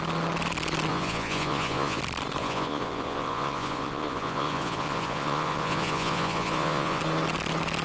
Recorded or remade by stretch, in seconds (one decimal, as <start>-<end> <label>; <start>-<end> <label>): 0.0-0.9 recorded; 0.9-2.0 remade; 2.0-2.4 recorded; 2.4-7.0 remade; 7.0-7.8 recorded